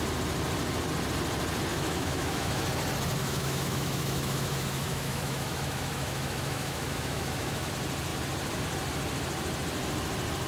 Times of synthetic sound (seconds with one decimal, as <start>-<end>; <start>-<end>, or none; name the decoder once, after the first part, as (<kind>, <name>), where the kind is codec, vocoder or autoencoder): 1.7-2.6 (autoencoder, DAC-VAE); 3.2-7.7

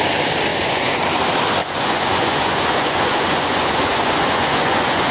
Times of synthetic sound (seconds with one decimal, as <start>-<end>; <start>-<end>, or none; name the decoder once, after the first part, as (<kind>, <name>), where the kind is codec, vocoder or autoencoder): 0.5-1.0 (vocoder, Vocos); 1.6-5.1

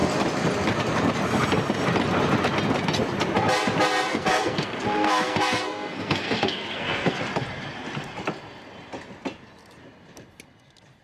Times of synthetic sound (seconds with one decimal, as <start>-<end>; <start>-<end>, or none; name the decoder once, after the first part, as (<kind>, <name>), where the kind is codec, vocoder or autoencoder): 4.1-7.2 (codec, SNAC)

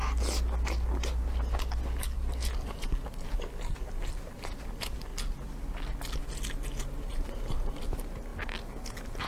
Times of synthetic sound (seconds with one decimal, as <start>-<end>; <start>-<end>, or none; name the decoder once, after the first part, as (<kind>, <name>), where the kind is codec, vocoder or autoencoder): 7.1-7.8 (vocoder, BigVGAN v2)